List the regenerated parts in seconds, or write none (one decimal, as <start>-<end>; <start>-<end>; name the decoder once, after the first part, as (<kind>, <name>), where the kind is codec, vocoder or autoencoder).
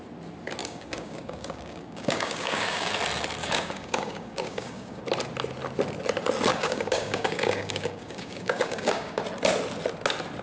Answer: 0.6-2.9 (codec, DAC); 3.4-5.0; 6.5-9.2